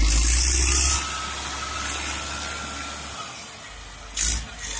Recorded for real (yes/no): yes